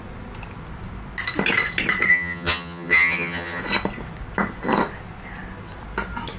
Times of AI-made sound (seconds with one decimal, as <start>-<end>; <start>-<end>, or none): 2.1-3.6